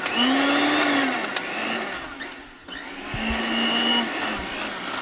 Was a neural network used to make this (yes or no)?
no